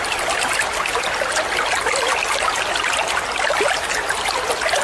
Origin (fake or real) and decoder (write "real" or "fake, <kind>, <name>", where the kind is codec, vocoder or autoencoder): real